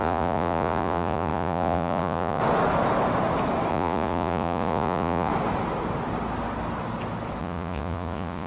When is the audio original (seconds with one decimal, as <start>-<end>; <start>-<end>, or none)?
2.4-3.7; 5.3-7.4